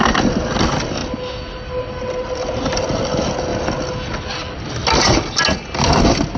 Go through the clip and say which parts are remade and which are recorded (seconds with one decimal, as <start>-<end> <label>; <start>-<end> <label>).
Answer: 0.0-6.4 recorded